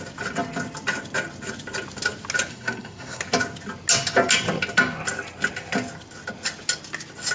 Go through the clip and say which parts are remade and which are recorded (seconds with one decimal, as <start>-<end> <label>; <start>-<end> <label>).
0.0-2.5 recorded; 2.5-3.2 remade; 3.2-7.3 recorded